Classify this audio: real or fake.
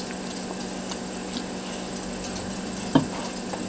real